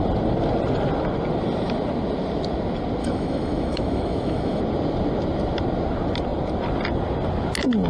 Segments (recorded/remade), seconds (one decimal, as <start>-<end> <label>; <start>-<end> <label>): 0.0-3.0 recorded; 3.0-4.6 remade; 4.6-7.9 recorded